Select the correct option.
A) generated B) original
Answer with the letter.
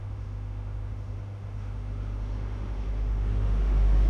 A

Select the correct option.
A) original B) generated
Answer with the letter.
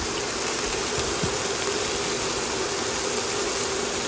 A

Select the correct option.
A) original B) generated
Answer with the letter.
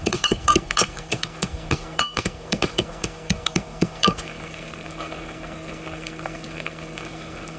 B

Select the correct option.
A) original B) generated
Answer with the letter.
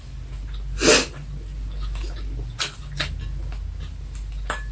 A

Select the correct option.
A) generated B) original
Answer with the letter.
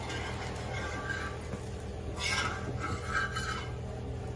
B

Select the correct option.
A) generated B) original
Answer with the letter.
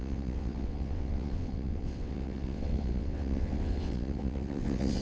A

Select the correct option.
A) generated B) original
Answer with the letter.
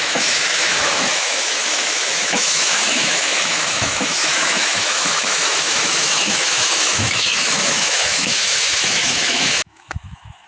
A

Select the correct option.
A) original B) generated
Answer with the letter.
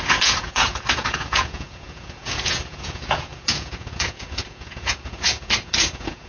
B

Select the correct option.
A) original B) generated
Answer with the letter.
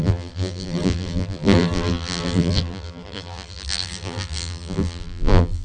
B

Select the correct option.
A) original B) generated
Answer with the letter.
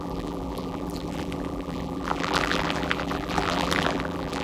B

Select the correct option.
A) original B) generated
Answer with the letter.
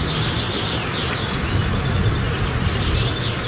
A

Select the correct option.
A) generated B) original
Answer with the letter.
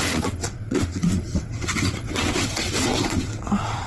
A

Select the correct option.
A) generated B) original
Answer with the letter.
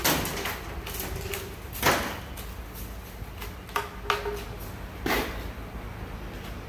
B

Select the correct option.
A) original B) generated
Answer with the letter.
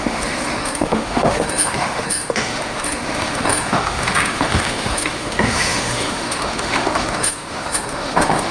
B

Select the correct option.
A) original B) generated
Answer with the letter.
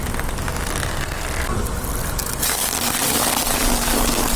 A